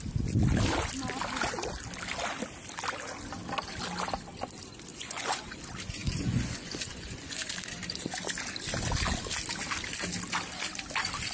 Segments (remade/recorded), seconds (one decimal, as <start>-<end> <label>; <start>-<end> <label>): 0.0-4.9 recorded; 4.9-5.6 remade; 5.6-6.0 recorded; 6.0-7.5 remade; 7.5-11.3 recorded